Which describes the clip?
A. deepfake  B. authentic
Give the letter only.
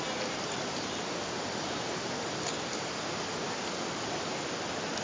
B